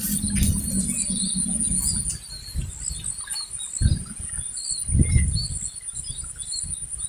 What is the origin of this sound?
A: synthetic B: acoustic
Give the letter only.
B